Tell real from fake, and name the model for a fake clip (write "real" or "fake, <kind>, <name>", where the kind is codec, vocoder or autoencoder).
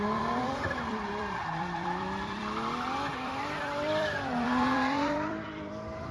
fake, vocoder, BigVGAN v2